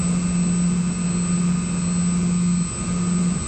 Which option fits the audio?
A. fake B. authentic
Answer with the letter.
B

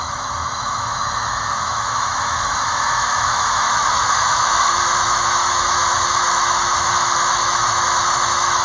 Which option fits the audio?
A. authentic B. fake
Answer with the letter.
B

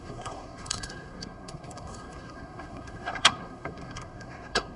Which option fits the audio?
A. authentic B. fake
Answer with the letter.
B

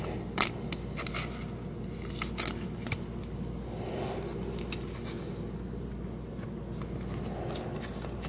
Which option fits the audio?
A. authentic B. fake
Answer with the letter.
A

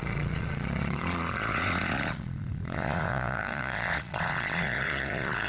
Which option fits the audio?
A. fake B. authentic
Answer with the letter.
A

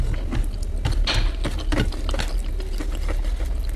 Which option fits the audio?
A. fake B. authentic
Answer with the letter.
B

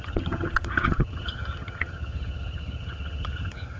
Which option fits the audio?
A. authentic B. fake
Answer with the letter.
B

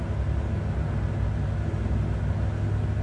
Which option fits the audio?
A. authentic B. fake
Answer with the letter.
A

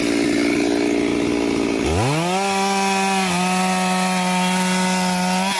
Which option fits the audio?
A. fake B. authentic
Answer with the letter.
B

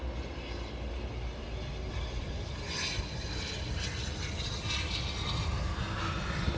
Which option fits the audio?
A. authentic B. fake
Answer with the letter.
A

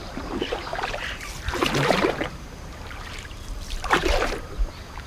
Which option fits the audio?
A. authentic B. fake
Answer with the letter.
B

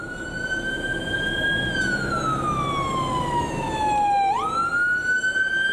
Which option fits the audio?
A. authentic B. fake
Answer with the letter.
A